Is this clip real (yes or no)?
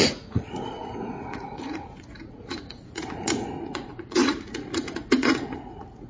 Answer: no